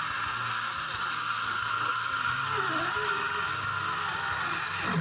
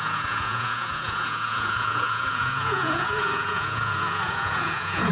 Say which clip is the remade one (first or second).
second